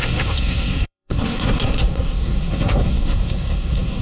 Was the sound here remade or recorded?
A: remade